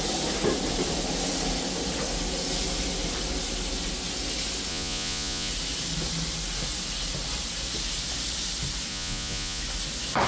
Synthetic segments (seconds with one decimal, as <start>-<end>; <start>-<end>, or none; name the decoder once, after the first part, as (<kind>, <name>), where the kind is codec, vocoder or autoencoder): 4.7-5.5 (vocoder, Vocos); 8.9-9.6